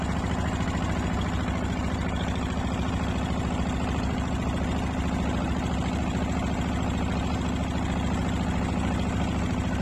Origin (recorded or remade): recorded